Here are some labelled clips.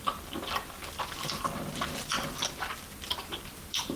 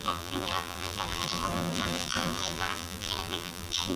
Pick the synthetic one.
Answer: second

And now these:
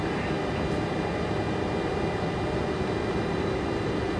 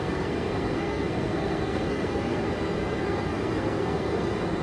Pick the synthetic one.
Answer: second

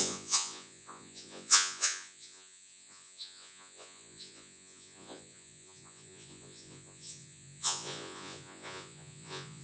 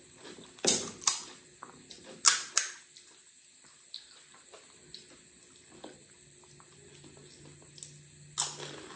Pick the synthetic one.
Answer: first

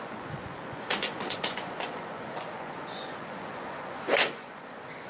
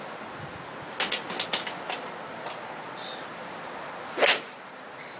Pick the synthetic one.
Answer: first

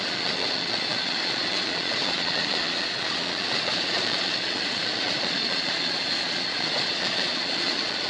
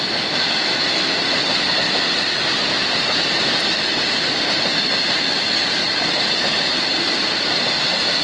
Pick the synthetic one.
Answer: first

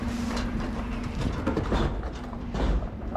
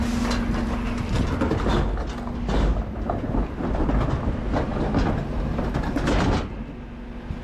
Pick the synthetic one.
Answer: first